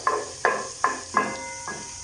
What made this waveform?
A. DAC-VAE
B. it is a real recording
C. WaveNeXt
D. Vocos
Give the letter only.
B